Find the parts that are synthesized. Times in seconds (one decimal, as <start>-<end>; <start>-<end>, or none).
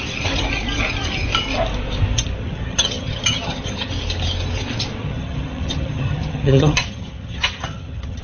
2.4-3.9; 5.0-8.2